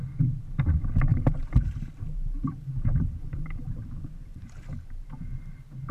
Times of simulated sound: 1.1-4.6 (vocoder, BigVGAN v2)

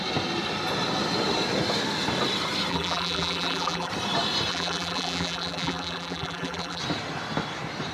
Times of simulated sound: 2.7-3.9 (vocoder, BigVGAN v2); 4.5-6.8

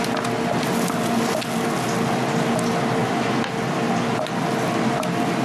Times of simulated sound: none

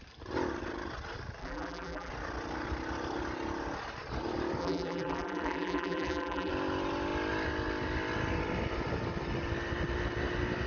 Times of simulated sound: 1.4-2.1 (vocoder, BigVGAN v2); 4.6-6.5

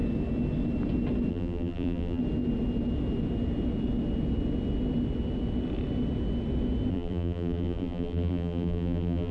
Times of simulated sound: 1.3-2.2 (vocoder, BigVGAN v2); 6.9-9.3

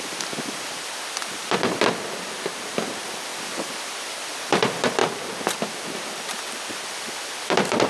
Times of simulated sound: 0.0-7.9 (vocoder, BigVGAN v2)

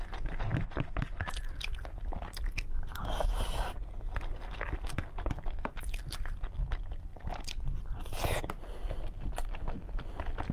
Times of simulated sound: none

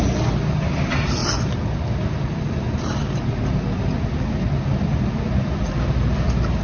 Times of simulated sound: none